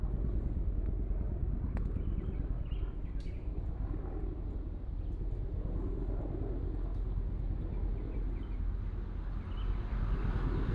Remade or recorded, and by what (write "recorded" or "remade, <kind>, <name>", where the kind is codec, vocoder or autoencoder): recorded